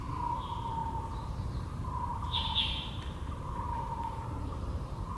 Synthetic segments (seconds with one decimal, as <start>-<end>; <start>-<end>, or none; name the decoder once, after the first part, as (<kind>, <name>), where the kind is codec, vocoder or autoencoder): 0.0-0.8 (vocoder, BigVGAN v2); 1.6-5.2